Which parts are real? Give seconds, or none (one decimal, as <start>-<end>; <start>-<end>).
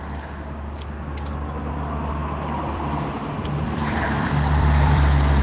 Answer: 0.0-2.2